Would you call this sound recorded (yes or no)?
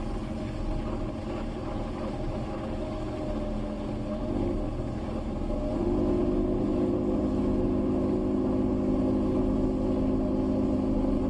yes